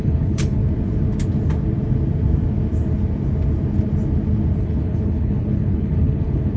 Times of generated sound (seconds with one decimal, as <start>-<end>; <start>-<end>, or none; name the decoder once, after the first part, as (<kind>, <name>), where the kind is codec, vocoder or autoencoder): 0.0-0.6 (codec, HILCodec); 4.6-6.6